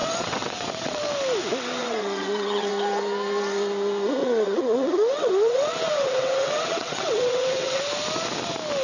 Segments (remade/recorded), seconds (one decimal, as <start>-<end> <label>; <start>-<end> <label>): 0.0-1.0 remade; 1.0-1.8 recorded; 1.8-2.7 remade; 2.7-4.2 recorded; 4.2-7.8 remade; 7.8-8.8 recorded

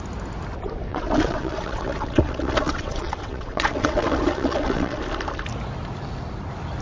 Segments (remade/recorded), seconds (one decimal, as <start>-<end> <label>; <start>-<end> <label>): 0.0-0.9 recorded; 0.9-5.0 remade; 5.0-6.8 recorded